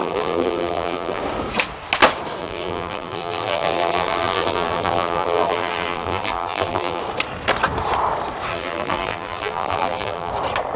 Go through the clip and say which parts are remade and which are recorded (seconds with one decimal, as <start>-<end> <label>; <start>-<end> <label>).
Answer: 0.0-1.2 remade; 1.2-2.4 recorded; 2.4-7.0 remade; 7.0-8.5 recorded; 8.5-10.3 remade; 10.3-10.8 recorded